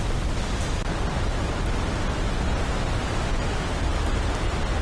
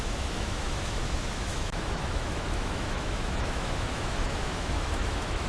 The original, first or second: first